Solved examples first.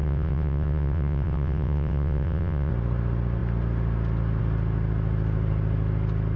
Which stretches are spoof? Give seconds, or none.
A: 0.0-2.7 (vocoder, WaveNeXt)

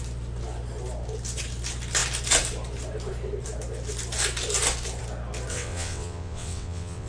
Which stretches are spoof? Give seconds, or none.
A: 5.5-7.1 (vocoder, WaveNeXt)

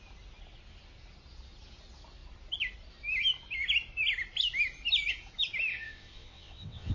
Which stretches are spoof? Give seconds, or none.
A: 5.7-6.9 (vocoder, WaveNeXt)

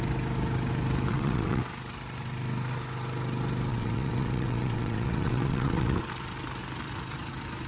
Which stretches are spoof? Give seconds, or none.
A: 1.1-1.6 (vocoder, WaveNeXt); 3.7-6.0

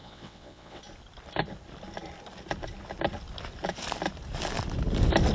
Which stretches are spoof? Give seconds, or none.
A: 0.0-0.8 (vocoder, WaveNeXt)

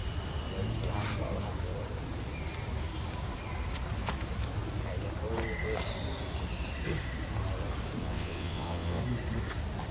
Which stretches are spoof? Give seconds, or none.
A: 8.0-9.0 (vocoder, WaveNeXt)

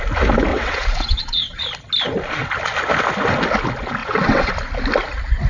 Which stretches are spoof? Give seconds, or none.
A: 0.5-1.6 (vocoder, WaveNeXt); 4.0-4.5